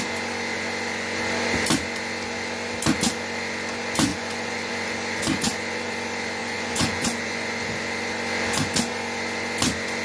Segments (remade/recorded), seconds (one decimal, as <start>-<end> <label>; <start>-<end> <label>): 0.0-4.1 recorded; 4.1-4.7 remade; 4.7-6.4 recorded; 6.4-7.7 remade; 7.7-10.0 recorded